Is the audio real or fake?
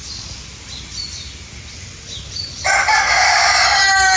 real